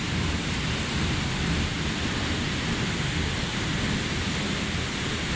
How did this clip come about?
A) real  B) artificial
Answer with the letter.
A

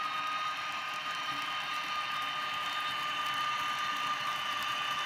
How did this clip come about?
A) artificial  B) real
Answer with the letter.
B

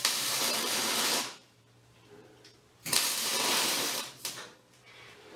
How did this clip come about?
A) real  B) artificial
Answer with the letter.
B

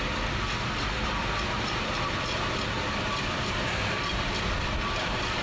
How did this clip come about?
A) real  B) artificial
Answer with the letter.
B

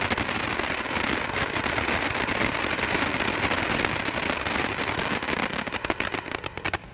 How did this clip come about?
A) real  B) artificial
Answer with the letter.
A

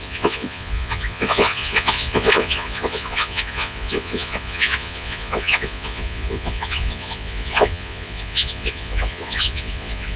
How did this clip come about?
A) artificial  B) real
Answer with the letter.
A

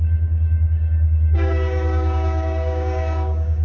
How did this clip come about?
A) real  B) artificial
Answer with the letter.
B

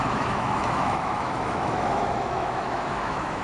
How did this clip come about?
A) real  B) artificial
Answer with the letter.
B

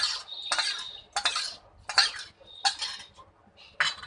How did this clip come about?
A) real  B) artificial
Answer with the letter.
A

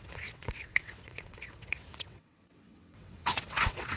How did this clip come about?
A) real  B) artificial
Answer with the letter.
B